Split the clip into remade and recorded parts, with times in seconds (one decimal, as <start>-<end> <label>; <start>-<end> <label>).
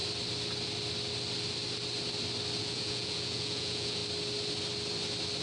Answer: 0.0-2.6 recorded; 2.6-4.0 remade; 4.0-5.4 recorded